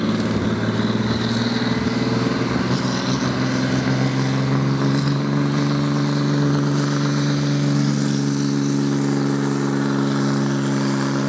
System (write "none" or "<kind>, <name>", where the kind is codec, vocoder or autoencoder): none